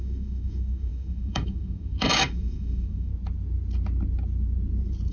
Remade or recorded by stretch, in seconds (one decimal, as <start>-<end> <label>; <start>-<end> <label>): 0.0-3.1 remade; 3.1-5.1 recorded